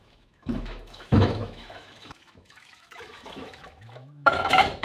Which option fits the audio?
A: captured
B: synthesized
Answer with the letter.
B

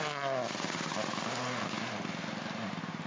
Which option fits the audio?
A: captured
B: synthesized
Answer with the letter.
A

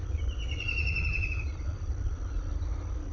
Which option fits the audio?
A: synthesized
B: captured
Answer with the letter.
B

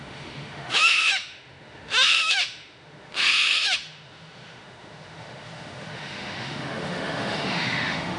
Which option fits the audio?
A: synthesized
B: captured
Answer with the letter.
A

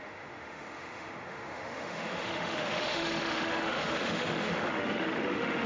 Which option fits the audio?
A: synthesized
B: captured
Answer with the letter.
A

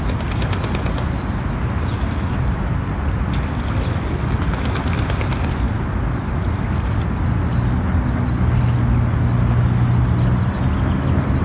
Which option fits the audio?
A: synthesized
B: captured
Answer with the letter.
B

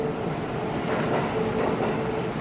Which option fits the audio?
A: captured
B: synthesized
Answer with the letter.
A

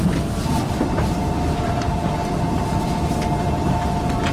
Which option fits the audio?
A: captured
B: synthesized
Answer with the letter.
A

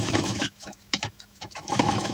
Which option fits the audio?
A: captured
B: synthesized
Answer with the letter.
B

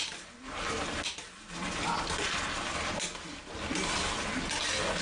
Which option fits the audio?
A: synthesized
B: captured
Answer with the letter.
B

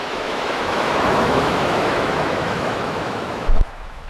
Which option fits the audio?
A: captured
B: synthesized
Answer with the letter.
B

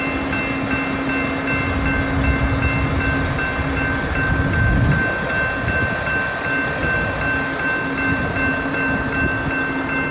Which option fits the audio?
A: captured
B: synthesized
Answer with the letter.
A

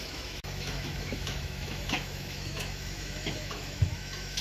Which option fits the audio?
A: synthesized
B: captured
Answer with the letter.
A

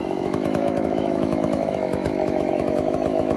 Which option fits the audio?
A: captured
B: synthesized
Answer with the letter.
B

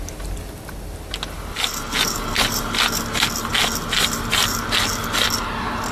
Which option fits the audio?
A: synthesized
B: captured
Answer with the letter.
B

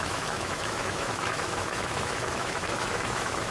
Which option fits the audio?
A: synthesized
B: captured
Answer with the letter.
A